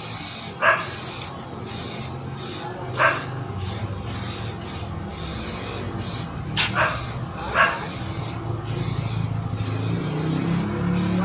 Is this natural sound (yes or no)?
yes